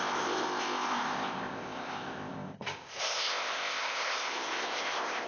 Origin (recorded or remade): remade